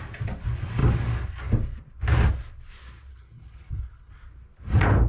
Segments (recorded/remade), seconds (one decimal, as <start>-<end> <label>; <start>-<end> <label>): 0.0-3.1 recorded; 3.1-4.1 remade; 4.1-5.1 recorded